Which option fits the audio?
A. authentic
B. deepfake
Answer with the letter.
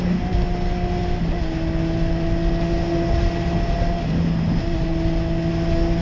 A